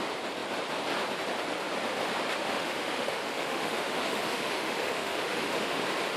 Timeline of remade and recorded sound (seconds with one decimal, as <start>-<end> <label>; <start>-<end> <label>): 0.0-2.4 recorded; 2.4-5.8 remade; 5.8-6.2 recorded